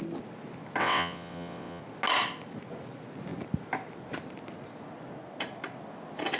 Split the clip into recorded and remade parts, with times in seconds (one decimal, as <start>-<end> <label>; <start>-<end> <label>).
0.0-0.8 recorded; 0.8-1.8 remade; 1.8-6.4 recorded